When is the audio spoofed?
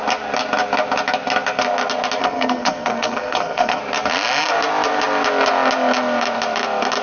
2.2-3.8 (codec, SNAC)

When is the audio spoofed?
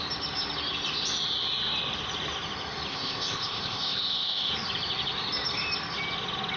2.9-4.5 (codec, ZipCodec)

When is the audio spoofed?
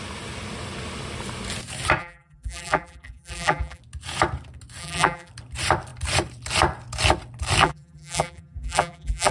2.0-3.8 (vocoder, BigVGAN v2); 4.8-5.3; 7.6-9.3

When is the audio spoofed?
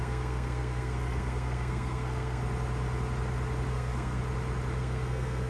0.0-2.4 (codec, SNAC); 3.7-4.2; 4.8-5.5